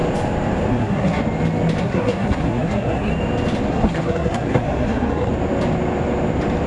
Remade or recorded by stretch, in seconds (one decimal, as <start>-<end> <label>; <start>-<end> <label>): 0.0-0.7 recorded; 0.7-1.2 remade; 1.2-1.8 recorded; 1.8-3.1 remade; 3.1-3.7 recorded; 3.7-5.3 remade; 5.3-6.7 recorded